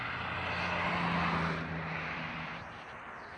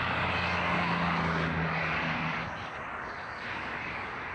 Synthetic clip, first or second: second